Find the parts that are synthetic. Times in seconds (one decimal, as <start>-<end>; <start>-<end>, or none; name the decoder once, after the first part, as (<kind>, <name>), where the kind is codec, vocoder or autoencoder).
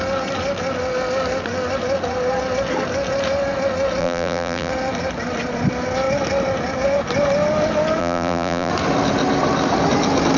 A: 4.0-4.7 (vocoder, BigVGAN v2); 8.0-8.7